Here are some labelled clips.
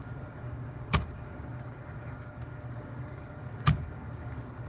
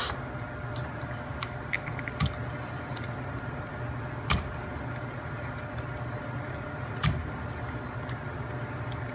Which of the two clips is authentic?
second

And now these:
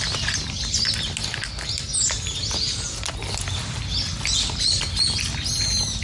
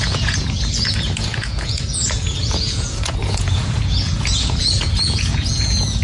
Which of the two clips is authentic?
first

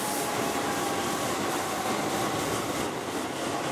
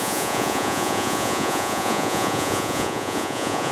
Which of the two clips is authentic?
first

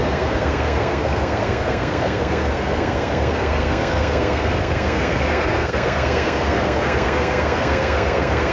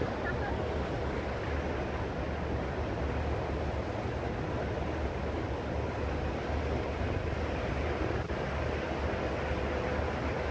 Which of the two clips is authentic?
second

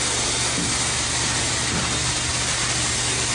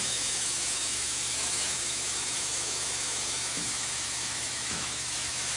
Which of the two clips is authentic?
first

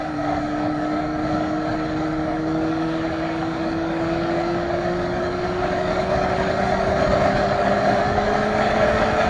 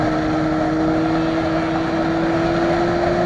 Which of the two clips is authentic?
second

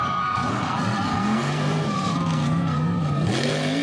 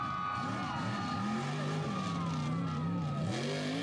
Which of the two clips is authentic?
second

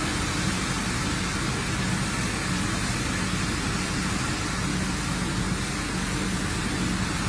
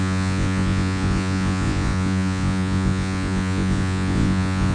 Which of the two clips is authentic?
first